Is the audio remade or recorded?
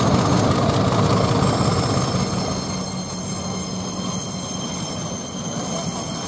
recorded